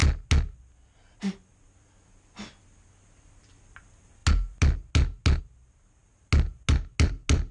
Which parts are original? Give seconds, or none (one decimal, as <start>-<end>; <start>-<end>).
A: 0.0-7.5